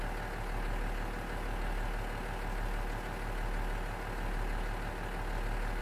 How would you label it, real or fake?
real